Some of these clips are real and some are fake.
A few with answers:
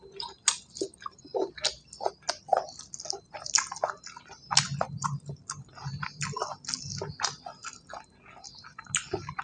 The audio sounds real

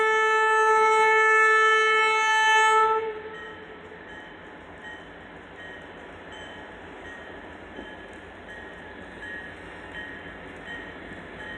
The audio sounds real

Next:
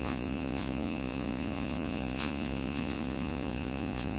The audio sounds fake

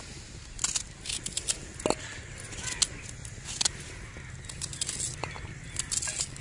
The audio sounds real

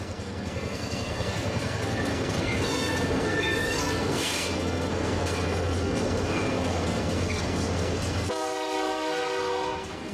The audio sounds fake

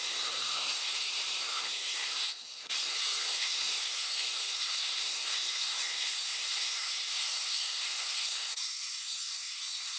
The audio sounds fake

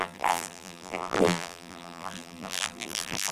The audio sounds fake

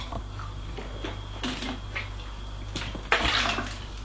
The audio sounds real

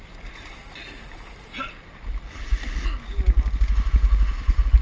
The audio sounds real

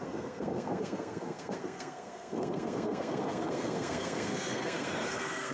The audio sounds fake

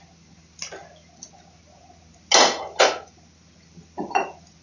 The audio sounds real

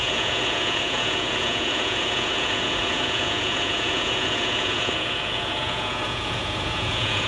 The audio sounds fake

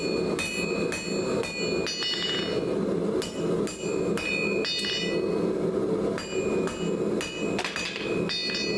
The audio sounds real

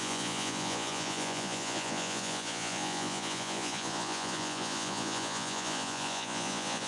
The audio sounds fake